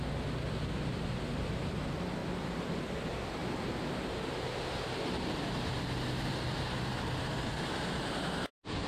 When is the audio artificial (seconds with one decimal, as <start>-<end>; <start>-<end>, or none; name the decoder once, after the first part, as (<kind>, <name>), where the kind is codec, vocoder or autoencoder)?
none